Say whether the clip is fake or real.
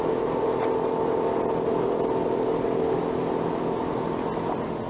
real